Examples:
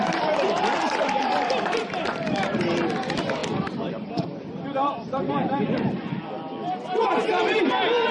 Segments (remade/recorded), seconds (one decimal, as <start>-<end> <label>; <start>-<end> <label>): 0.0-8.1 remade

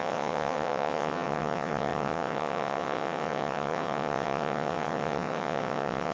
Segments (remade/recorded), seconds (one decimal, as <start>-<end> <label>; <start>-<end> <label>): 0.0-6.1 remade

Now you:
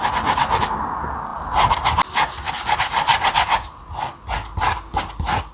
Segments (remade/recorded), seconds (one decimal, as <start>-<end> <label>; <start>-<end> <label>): 0.0-5.5 recorded

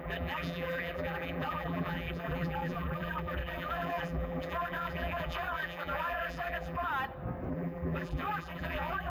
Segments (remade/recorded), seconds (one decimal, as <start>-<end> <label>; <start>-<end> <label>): 0.0-6.9 remade; 6.9-7.5 recorded; 7.5-9.1 remade

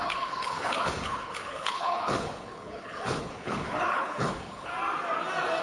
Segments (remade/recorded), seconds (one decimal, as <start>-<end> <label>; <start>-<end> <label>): 0.0-4.7 remade; 4.7-5.6 recorded